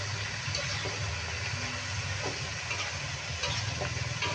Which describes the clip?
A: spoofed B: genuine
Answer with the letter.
B